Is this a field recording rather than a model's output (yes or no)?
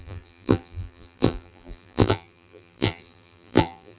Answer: no